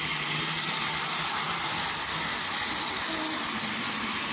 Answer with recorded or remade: recorded